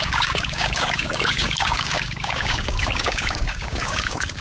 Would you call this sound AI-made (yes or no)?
yes